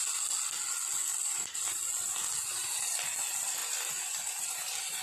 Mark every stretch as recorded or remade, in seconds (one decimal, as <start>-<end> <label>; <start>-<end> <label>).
0.0-2.5 recorded; 2.5-3.2 remade; 3.2-3.6 recorded; 3.6-5.0 remade